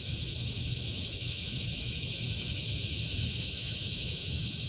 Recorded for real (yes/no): no